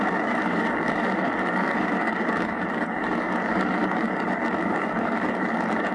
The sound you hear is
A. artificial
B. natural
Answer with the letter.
A